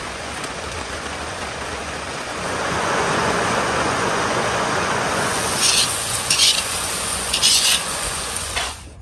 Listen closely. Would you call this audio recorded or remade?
remade